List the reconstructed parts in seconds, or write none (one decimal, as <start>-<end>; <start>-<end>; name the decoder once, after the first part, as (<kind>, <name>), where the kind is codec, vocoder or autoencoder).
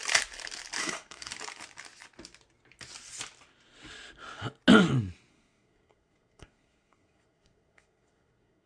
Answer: 0.8-1.3 (codec, SNAC); 5.3-8.7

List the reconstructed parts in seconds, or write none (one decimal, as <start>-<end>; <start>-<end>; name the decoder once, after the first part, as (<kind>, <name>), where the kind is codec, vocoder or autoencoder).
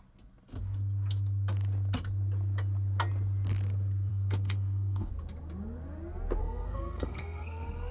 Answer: 4.1-5.1 (codec, SNAC); 6.4-7.9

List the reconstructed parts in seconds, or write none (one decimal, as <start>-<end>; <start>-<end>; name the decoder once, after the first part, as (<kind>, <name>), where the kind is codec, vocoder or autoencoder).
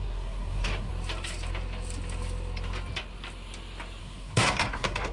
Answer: 0.0-0.9 (codec, SNAC); 4.0-5.1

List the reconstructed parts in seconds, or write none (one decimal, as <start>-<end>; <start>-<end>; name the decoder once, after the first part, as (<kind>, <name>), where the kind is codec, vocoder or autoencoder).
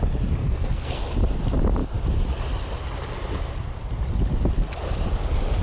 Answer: 0.4-1.0 (codec, SNAC)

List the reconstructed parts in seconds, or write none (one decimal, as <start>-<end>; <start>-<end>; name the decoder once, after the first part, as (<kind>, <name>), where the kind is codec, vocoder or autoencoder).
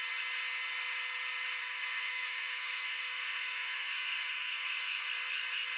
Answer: 1.6-5.1 (codec, SNAC)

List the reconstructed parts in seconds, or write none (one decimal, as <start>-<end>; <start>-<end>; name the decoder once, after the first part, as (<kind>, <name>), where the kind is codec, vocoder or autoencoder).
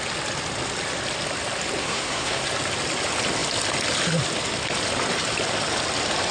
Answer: 1.8-2.4 (codec, SNAC)